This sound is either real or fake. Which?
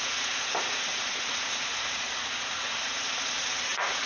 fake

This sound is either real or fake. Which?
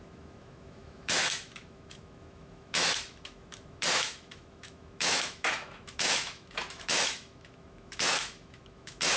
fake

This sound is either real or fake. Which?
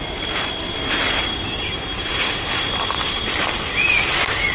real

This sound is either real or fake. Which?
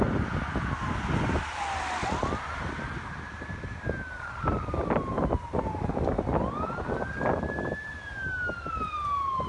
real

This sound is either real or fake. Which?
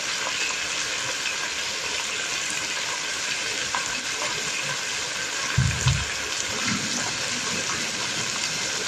real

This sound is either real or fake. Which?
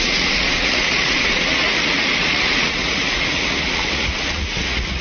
fake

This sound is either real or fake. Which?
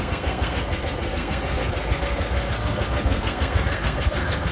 fake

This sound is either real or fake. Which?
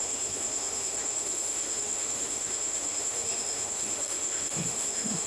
fake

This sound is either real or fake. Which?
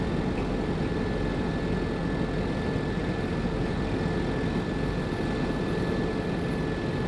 real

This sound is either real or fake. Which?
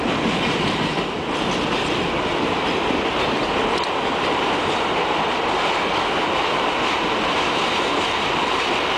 real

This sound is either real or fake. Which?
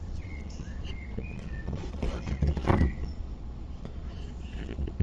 fake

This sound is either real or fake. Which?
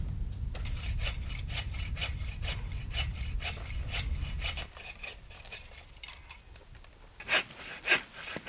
real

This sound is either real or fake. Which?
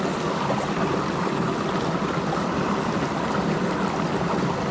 real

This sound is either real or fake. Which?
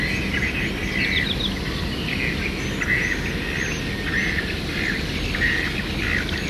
real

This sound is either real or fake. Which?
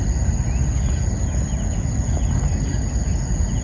real